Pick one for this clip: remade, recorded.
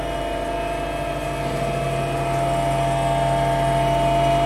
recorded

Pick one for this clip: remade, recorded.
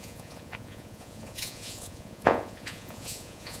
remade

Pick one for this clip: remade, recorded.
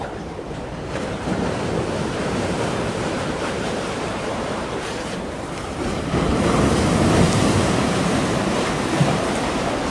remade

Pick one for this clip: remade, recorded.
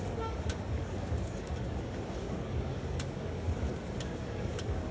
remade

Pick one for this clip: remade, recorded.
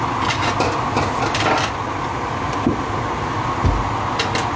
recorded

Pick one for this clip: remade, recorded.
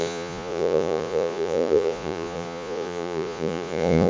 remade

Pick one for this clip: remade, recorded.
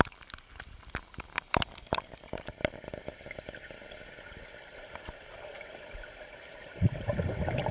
recorded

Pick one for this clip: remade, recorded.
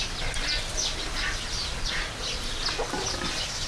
recorded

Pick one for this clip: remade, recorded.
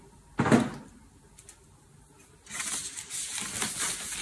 recorded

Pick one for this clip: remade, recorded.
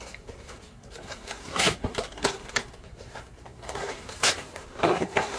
remade